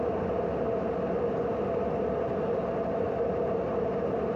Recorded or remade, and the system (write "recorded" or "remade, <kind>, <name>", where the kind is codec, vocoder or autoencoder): recorded